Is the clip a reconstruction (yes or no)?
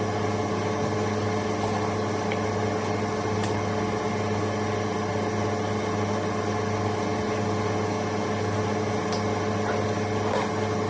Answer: no